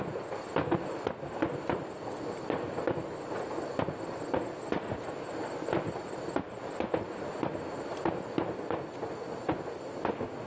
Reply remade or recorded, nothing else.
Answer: recorded